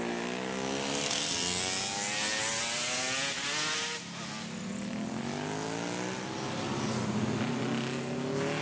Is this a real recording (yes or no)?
yes